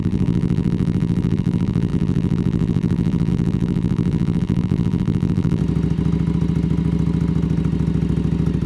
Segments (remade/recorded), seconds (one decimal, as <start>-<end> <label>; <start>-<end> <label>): 0.0-5.6 remade; 5.6-8.7 recorded

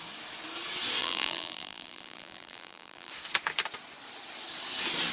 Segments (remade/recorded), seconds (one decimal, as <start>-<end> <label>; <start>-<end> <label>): 0.0-1.0 recorded; 1.0-3.1 remade; 3.1-5.1 recorded

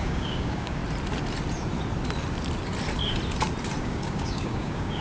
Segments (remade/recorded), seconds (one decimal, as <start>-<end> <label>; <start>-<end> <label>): 0.0-0.8 remade; 0.8-3.8 recorded; 3.8-5.0 remade

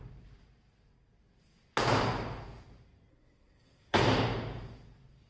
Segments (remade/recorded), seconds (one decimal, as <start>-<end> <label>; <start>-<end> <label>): 0.0-3.1 recorded; 3.1-4.0 remade; 4.0-5.3 recorded

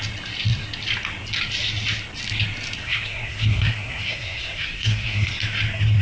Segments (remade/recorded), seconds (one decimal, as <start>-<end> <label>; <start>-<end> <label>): 0.0-2.8 recorded; 2.8-5.3 remade; 5.3-6.0 recorded